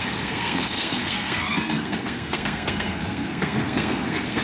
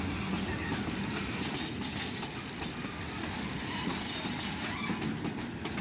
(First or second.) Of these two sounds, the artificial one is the first